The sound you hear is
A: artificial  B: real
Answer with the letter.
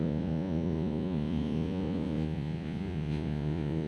A